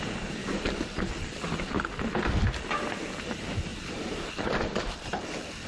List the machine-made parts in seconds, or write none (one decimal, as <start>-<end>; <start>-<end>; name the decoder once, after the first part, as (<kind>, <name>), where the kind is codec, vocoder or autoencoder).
0.4-1.0 (vocoder, BigVGAN v2); 3.7-5.2